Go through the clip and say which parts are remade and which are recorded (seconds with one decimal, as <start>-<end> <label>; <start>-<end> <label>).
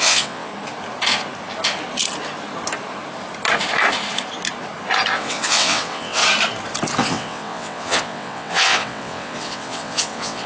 0.0-0.5 remade; 0.5-5.2 recorded; 5.2-6.2 remade; 6.2-7.0 recorded; 7.0-10.5 remade